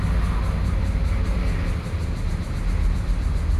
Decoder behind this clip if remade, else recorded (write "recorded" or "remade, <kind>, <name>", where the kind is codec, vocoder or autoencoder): recorded